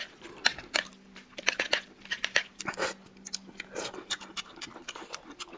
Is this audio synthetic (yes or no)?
no